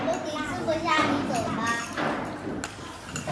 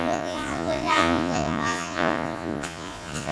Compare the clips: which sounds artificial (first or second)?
second